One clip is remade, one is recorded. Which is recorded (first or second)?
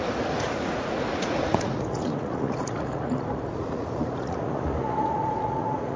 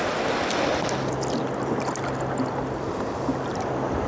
second